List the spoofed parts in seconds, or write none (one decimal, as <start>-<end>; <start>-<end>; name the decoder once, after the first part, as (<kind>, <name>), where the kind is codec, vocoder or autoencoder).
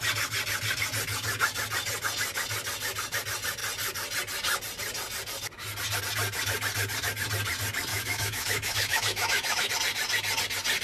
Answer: 7.9-9.7 (autoencoder, DAC-VAE)